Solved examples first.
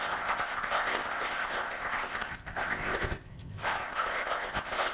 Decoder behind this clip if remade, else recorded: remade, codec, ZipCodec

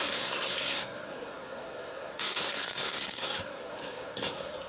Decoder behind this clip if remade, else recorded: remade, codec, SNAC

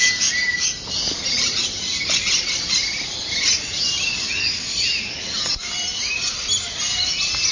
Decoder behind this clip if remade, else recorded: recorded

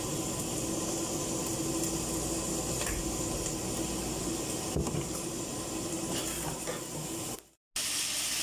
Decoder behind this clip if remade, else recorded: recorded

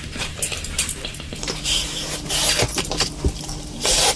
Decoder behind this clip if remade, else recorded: remade, vocoder, BigVGAN v2